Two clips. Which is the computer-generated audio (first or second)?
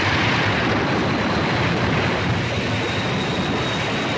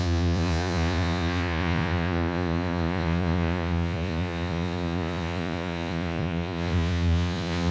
second